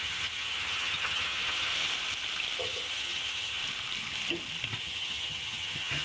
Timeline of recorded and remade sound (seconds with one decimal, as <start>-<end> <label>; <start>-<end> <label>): 0.0-1.7 remade; 1.7-2.6 recorded; 2.6-3.6 remade; 3.6-4.8 recorded; 4.8-6.0 remade